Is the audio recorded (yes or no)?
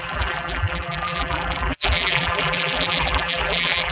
no